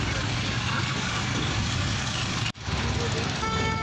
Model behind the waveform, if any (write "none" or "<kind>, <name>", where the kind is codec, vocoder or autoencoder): codec, DAC